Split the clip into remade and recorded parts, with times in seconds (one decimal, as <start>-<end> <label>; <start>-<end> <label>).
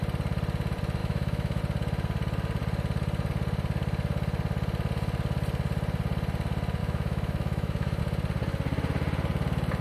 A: 0.0-1.0 recorded; 1.0-1.6 remade; 1.6-6.8 recorded; 6.8-8.0 remade; 8.0-9.8 recorded